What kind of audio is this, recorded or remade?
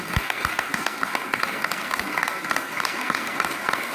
remade